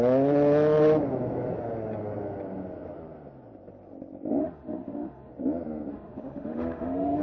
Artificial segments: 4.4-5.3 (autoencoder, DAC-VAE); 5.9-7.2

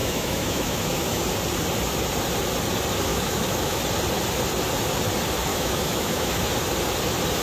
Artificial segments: 0.0-1.2 (autoencoder, DAC-VAE); 3.1-3.8; 5.5-6.4